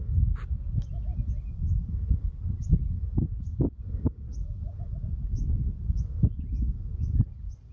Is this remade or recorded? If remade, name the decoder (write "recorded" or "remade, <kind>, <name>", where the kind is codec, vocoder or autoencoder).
recorded